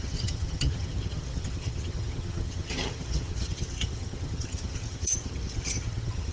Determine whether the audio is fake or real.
fake